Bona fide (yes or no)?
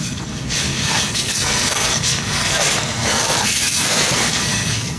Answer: no